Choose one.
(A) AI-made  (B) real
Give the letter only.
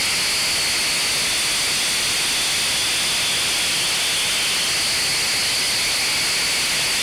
B